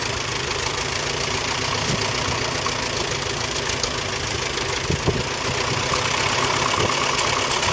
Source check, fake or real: real